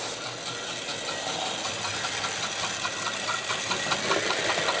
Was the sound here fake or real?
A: real